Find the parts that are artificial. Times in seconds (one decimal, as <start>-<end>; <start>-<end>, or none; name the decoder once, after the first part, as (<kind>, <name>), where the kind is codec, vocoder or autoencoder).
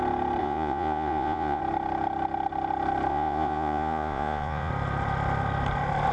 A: 0.4-1.6 (vocoder, Vocos); 3.1-4.7